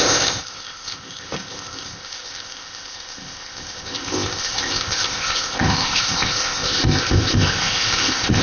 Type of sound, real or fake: fake